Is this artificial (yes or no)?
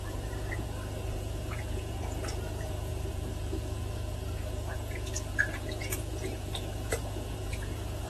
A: yes